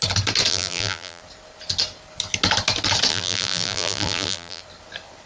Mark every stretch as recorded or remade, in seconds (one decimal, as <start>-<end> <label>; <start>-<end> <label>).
0.0-0.5 recorded; 0.5-1.2 remade; 1.2-3.1 recorded; 3.1-4.6 remade; 4.6-5.3 recorded

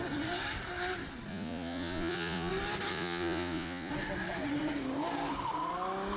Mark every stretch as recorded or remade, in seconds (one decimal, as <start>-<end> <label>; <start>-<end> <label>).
0.0-1.3 recorded; 1.3-2.5 remade; 2.5-2.9 recorded; 2.9-3.9 remade; 3.9-6.2 recorded

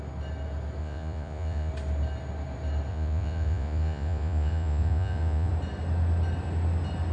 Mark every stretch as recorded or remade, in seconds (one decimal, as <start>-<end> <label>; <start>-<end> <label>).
0.0-0.8 recorded; 0.8-1.7 remade; 1.7-2.9 recorded; 2.9-5.5 remade; 5.5-7.1 recorded

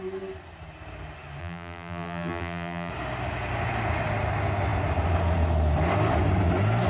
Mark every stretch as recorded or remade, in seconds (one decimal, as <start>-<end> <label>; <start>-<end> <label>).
0.0-1.4 recorded; 1.4-2.9 remade; 2.9-6.9 recorded